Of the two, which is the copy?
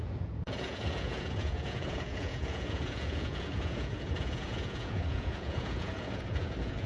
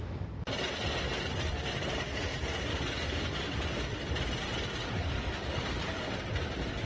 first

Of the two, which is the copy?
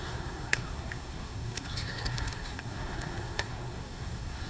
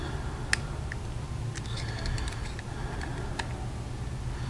first